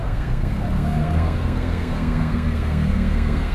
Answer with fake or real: fake